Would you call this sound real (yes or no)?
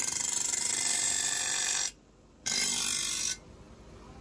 no